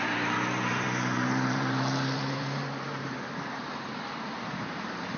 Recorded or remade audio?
remade